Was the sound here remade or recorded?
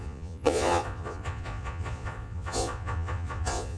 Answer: remade